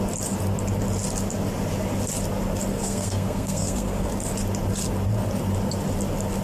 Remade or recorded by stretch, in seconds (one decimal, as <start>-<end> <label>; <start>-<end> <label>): 0.0-2.7 recorded; 2.7-4.1 remade; 4.1-6.4 recorded